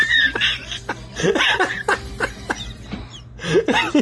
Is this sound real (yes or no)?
yes